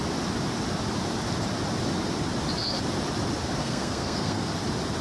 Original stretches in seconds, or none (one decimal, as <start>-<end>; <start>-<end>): 0.0-3.6; 4.5-5.0